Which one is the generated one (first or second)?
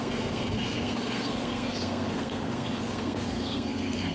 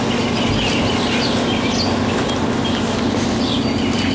first